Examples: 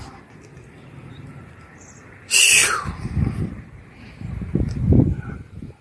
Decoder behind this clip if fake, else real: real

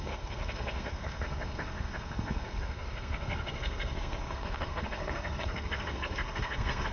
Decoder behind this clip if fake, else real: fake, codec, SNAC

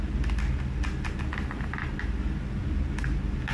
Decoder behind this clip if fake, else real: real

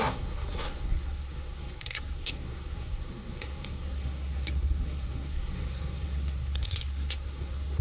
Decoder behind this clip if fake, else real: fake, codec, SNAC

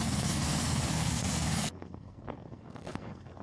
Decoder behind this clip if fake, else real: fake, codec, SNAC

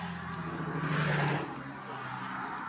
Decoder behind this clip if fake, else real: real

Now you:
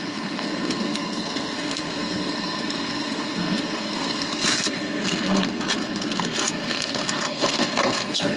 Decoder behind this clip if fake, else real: fake, codec, SNAC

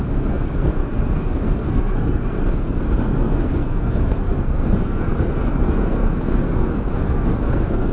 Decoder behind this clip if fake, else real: fake, codec, SNAC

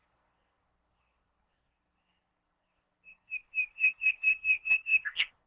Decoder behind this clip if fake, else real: fake, codec, SNAC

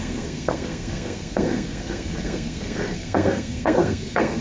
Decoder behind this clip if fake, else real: fake, codec, SNAC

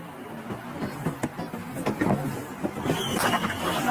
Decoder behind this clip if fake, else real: real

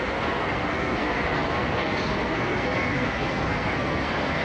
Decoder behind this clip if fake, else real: fake, codec, SNAC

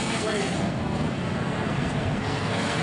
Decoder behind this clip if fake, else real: fake, codec, SNAC